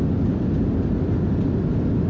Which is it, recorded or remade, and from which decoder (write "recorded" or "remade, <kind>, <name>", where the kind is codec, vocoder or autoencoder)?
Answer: recorded